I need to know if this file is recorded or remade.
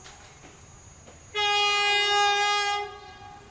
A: recorded